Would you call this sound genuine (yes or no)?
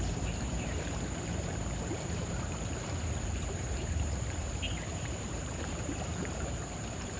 no